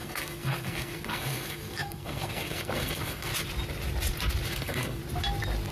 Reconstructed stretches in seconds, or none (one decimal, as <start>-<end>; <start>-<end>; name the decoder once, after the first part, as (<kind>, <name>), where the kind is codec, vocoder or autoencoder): 0.0-3.3 (codec, SNAC); 4.5-5.0